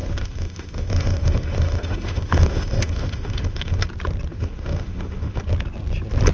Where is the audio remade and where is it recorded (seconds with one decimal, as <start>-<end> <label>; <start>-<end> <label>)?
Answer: 0.0-3.8 remade; 3.8-4.3 recorded; 4.3-5.4 remade; 5.4-6.3 recorded